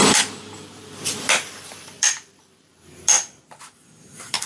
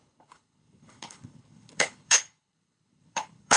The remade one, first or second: second